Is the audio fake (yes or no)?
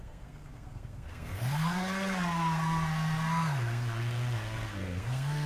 yes